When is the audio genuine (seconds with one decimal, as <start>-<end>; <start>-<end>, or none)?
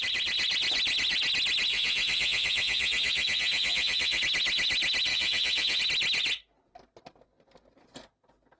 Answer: 0.0-1.7; 4.2-5.1; 5.8-8.6